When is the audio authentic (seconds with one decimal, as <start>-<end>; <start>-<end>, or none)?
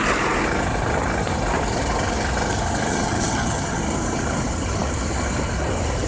0.0-2.9; 3.8-6.1